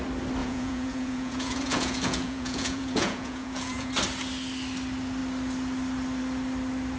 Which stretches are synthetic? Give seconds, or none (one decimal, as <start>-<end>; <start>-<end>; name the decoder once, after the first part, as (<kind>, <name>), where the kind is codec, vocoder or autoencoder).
0.4-3.9 (vocoder, Vocos)